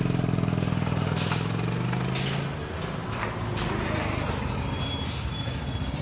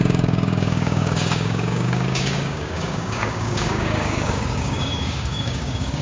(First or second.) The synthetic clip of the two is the second